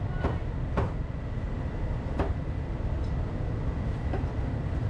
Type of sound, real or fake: fake